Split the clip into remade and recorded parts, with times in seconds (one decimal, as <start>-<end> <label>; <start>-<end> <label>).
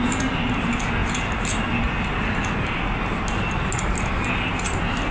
0.0-5.1 recorded